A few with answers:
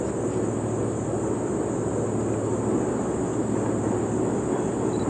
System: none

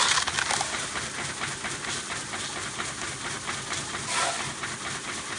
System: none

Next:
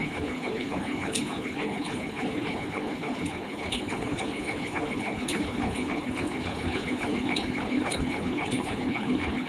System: codec, HILCodec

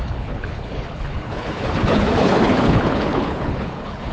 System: codec, HILCodec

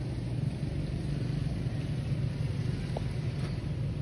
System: none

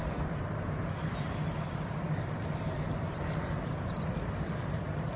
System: none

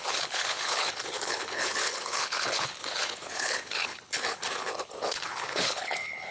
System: codec, HILCodec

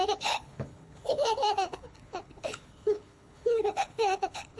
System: codec, HILCodec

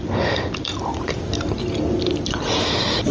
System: none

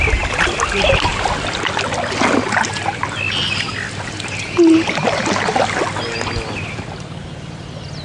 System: none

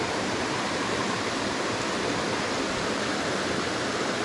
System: none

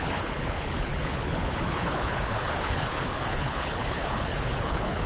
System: codec, HILCodec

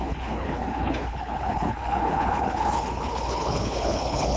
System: codec, HILCodec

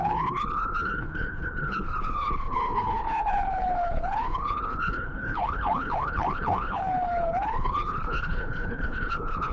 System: codec, HILCodec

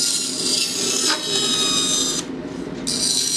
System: none